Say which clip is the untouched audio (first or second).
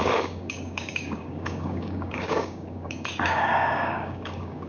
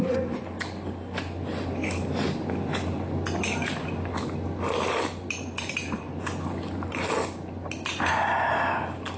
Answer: second